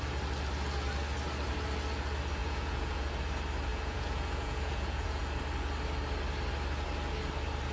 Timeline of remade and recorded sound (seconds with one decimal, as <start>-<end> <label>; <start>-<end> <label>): 0.0-2.4 recorded; 2.4-3.1 remade; 3.1-3.7 recorded; 3.7-5.2 remade; 5.2-7.7 recorded